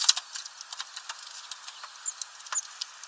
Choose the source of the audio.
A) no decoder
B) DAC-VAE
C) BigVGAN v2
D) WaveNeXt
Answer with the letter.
A